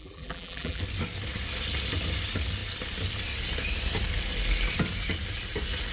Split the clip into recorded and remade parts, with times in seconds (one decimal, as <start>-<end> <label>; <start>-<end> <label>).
0.0-0.8 remade; 0.8-5.9 recorded